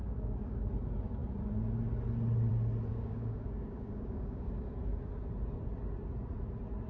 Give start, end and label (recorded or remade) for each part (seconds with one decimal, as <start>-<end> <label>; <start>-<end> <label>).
0.0-0.7 remade; 0.7-2.9 recorded; 2.9-4.5 remade; 4.5-6.9 recorded